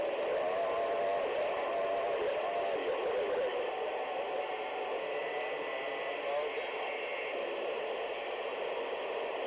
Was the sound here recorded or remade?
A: recorded